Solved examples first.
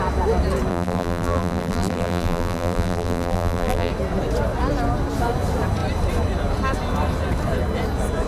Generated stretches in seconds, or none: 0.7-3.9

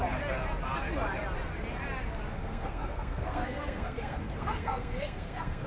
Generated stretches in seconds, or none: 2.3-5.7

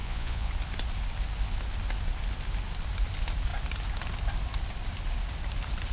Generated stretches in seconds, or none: 0.0-0.5

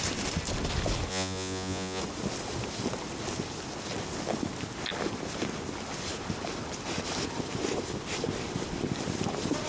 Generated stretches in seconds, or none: 1.1-2.0

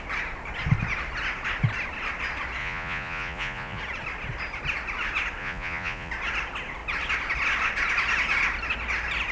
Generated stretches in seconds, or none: 2.6-3.8; 5.4-6.1

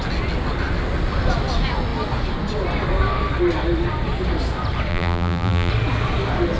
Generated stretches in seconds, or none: 4.9-5.7

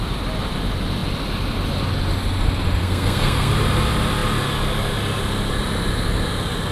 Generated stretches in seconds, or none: 2.8-3.5

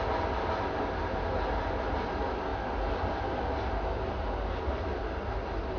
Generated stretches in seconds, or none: none